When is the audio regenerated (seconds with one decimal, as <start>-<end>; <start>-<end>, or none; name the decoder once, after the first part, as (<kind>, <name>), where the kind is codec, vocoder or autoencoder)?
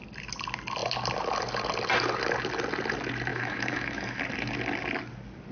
3.3-4.2 (autoencoder, DAC-VAE)